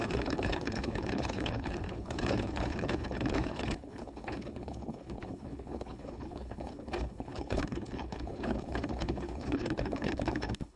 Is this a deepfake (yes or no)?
yes